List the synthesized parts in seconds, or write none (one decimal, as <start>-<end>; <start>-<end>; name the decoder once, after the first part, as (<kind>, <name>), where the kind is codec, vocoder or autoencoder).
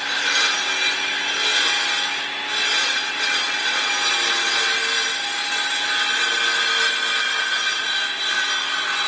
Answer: 2.8-3.9 (vocoder, WaveNeXt)